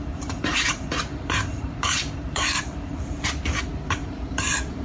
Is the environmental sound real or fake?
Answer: fake